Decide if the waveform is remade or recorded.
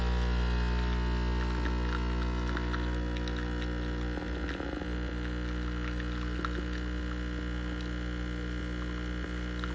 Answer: recorded